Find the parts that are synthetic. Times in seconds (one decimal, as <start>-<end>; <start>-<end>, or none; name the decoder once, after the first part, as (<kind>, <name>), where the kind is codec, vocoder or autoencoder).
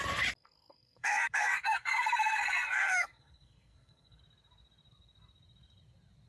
0.4-4.2 (codec, SNAC)